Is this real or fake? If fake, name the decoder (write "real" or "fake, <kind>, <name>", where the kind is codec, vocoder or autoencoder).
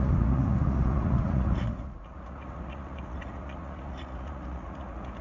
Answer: fake, vocoder, Vocos